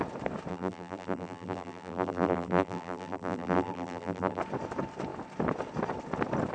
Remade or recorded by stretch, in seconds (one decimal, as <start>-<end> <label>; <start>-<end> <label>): 0.0-0.5 recorded; 0.5-4.4 remade; 4.4-6.5 recorded